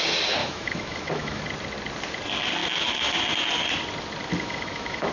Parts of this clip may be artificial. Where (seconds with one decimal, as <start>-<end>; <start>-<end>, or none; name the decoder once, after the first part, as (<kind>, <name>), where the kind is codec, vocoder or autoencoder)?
0.4-1.4 (autoencoder, DAC-VAE); 2.6-3.2; 4.3-5.1